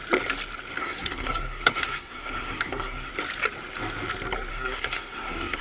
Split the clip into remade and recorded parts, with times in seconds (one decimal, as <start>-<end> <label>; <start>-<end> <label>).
0.0-0.8 recorded; 0.8-3.1 remade; 3.1-4.5 recorded; 4.5-5.6 remade